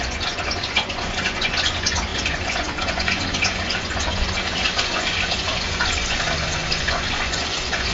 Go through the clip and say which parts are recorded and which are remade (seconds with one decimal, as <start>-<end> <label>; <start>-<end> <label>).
0.0-7.9 remade